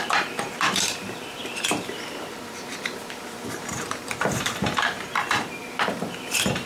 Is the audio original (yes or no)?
no